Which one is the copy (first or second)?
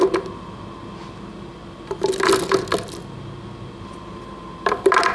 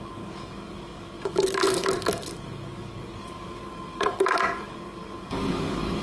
second